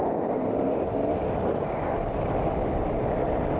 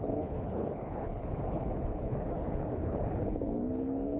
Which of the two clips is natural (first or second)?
first